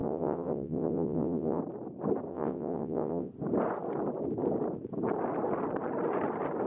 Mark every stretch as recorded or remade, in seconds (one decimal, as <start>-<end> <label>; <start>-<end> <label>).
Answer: 0.0-1.6 remade; 1.6-2.3 recorded; 2.3-3.3 remade; 3.3-6.7 recorded